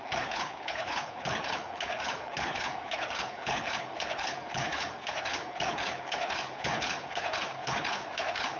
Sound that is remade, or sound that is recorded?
remade